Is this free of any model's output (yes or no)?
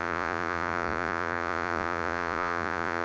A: no